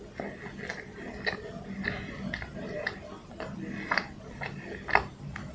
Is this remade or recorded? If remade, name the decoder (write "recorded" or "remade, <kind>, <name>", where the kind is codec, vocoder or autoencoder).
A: recorded